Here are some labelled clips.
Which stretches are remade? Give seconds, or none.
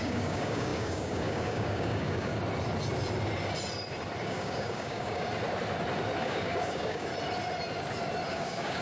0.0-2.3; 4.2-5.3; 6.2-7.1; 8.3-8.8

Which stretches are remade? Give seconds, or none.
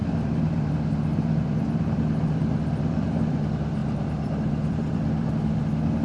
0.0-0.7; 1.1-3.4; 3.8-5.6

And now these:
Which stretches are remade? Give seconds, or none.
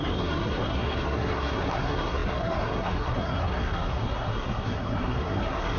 0.0-5.8